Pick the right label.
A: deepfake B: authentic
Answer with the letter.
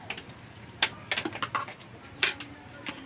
B